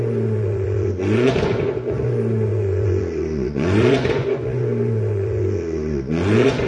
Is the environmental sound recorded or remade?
remade